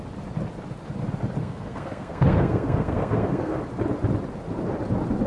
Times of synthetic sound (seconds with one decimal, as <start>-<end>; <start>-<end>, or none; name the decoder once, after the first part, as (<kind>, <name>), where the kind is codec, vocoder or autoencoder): 1.4-3.6 (codec, SNAC)